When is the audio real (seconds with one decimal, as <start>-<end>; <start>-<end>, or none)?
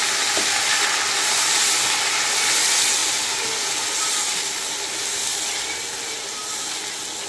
0.0-7.3